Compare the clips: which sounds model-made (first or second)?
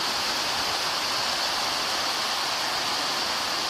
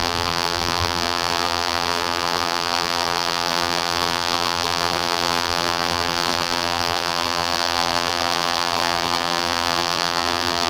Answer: second